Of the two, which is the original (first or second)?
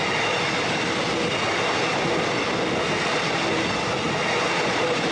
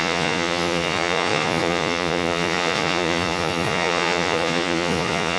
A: first